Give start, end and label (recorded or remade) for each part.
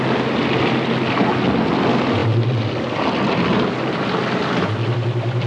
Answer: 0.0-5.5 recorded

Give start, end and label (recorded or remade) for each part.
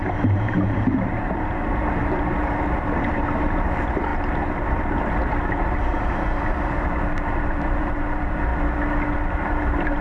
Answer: 0.0-8.5 remade; 8.5-9.1 recorded; 9.1-10.0 remade